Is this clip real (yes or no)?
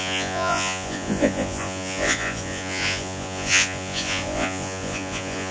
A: no